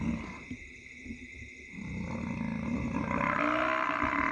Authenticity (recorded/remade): recorded